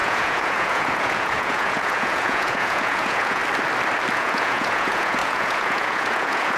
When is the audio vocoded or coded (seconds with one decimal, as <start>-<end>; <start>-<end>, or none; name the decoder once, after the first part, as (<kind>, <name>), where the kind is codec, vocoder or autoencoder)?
0.0-3.4 (vocoder, Vocos); 4.1-6.6